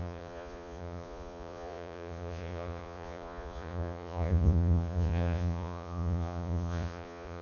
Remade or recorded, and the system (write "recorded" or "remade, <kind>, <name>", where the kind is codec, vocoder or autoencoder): remade, vocoder, Vocos